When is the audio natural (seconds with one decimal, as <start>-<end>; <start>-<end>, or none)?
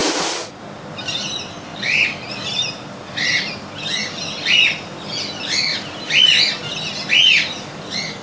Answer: 0.6-1.7; 5.1-8.2